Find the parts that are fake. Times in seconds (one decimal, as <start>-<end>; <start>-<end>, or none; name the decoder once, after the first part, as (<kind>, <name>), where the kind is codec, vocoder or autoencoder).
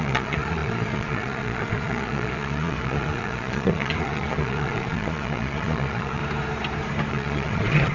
0.0-6.2 (vocoder, Vocos); 7.1-7.9